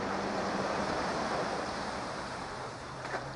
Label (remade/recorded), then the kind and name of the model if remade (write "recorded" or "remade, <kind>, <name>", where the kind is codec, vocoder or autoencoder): remade, vocoder, BigVGAN v2